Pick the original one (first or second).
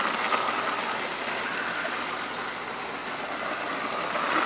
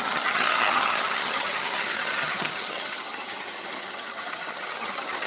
first